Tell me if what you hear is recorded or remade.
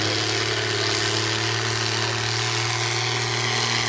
recorded